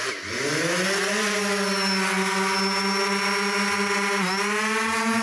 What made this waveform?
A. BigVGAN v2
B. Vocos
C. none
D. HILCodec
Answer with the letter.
C